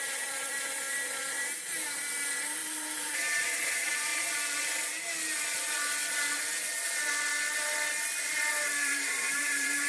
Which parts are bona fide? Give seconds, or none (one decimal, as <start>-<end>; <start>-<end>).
4.1-8.5